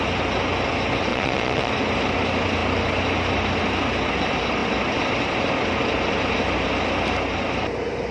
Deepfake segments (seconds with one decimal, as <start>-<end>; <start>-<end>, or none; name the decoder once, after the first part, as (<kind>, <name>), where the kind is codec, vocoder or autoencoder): 1.1-1.7 (vocoder, Vocos)